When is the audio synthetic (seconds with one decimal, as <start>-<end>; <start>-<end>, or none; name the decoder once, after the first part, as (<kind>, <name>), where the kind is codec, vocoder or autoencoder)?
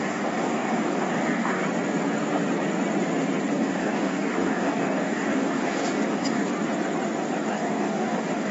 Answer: 0.0-1.6 (codec, DAC); 3.5-6.5; 7.5-8.5